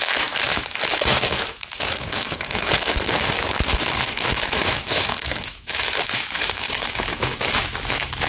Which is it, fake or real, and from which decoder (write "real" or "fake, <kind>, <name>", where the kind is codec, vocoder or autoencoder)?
fake, autoencoder, DAC-VAE